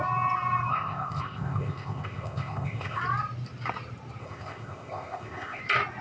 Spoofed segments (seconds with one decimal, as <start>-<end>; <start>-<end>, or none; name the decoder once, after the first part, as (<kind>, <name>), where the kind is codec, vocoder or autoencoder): 0.7-3.0 (codec, ZipCodec); 4.2-5.6